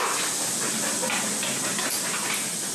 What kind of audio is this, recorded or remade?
recorded